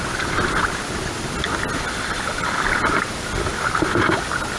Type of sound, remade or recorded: recorded